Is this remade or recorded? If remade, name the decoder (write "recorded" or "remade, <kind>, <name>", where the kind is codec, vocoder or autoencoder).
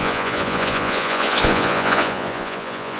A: remade, vocoder, Vocos